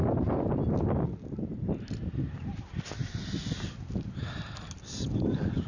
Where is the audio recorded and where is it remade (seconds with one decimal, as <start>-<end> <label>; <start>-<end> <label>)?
0.0-5.7 recorded